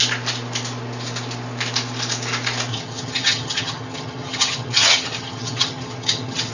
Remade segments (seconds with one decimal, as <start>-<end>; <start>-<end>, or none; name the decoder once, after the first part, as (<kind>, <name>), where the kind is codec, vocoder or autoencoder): 2.7-6.5 (vocoder, HiFi-GAN)